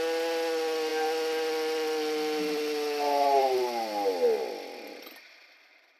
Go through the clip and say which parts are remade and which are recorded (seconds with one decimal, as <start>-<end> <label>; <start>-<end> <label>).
0.0-6.0 recorded